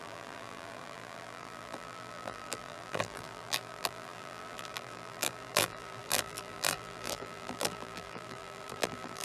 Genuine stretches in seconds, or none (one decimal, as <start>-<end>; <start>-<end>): none